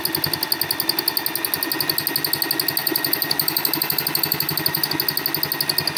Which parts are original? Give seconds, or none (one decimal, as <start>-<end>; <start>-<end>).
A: 0.0-2.8; 4.9-6.0